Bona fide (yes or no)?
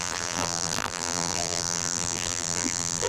no